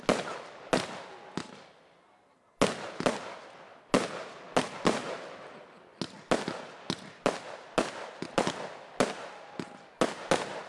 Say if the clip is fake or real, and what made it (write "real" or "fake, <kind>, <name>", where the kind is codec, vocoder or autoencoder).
real